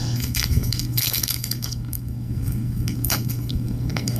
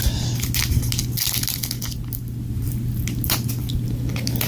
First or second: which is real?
second